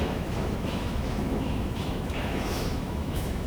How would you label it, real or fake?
fake